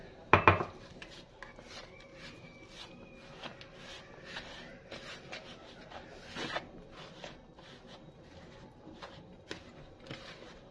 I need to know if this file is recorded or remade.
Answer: recorded